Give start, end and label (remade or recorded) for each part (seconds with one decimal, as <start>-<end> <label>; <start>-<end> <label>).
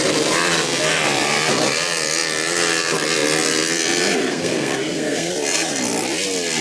0.0-4.3 recorded; 4.3-5.3 remade; 5.3-6.6 recorded